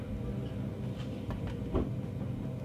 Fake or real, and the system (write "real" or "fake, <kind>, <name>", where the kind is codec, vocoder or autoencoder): real